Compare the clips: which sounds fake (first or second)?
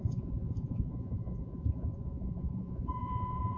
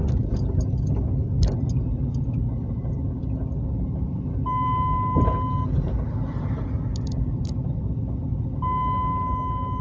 first